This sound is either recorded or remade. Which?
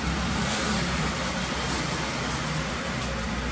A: remade